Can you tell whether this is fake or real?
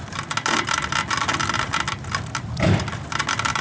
real